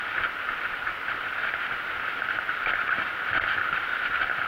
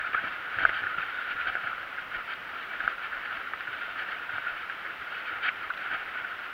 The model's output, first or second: second